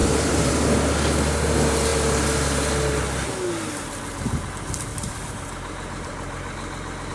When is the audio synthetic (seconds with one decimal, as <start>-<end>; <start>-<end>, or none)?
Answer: 0.0-0.5; 4.9-7.1